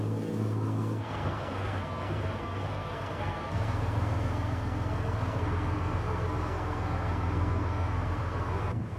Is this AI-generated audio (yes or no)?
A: yes